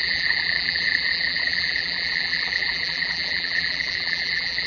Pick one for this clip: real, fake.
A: fake